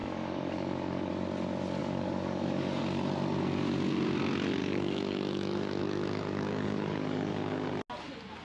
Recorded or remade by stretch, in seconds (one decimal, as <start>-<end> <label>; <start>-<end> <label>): 0.0-1.1 remade; 1.1-1.8 recorded; 1.8-2.8 remade; 2.8-4.6 recorded; 4.6-7.7 remade; 7.7-8.4 recorded

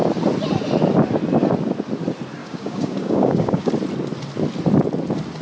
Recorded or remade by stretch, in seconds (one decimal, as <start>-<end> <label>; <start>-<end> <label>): 0.0-2.4 recorded; 2.4-3.7 remade; 3.7-5.4 recorded